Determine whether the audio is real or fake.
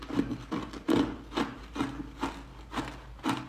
real